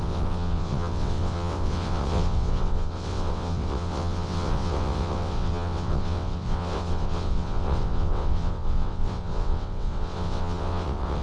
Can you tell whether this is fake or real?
fake